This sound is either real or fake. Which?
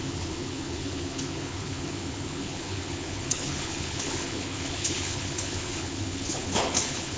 fake